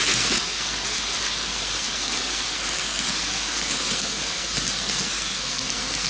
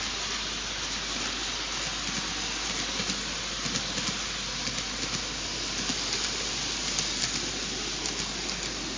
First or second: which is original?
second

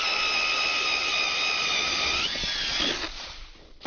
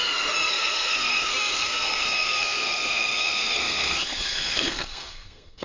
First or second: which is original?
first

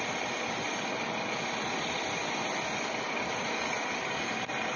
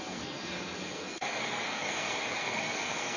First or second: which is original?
first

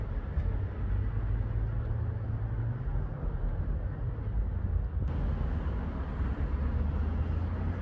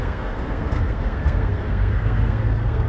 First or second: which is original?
first